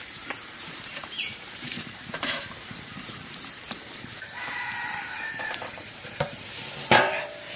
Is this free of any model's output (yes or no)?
no